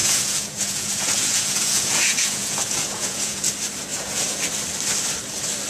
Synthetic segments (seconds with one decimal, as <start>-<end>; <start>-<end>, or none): 0.0-3.4; 3.9-4.4